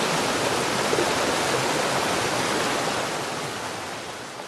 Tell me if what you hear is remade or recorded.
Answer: recorded